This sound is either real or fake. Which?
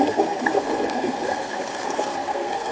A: fake